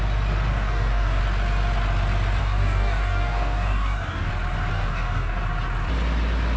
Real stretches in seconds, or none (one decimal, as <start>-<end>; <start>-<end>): 0.0-0.5; 1.2-2.4; 4.3-4.7; 5.4-6.6